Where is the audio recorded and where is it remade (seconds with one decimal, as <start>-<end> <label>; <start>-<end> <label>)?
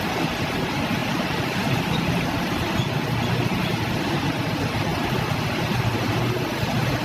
0.0-1.0 recorded; 1.0-3.3 remade; 3.3-3.7 recorded; 3.7-4.3 remade; 4.3-7.0 recorded